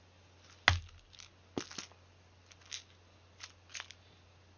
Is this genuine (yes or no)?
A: yes